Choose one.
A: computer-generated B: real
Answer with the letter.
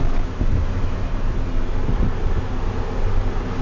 B